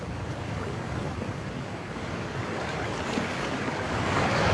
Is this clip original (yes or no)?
no